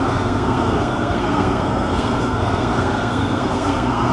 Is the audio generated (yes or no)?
yes